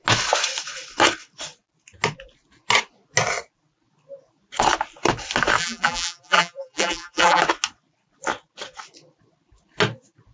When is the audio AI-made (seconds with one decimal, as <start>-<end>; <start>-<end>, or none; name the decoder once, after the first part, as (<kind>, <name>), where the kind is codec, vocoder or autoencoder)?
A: 5.6-7.4 (vocoder, BigVGAN v2)

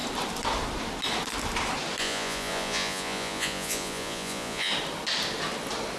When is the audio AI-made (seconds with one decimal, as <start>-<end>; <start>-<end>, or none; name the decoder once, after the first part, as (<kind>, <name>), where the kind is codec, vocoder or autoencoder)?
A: 2.0-4.7 (vocoder, Vocos)